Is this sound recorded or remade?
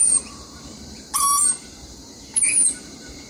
remade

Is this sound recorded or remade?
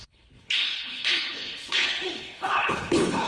remade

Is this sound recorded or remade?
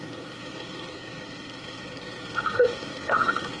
remade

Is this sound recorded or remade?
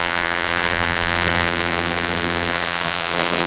remade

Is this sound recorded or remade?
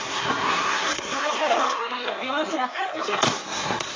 remade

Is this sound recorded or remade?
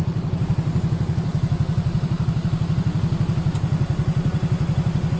recorded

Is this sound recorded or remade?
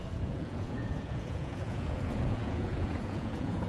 remade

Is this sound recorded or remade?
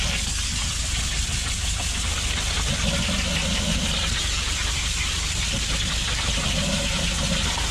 recorded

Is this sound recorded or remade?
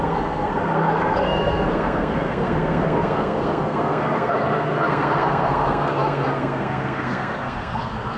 remade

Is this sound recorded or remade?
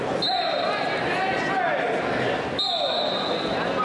recorded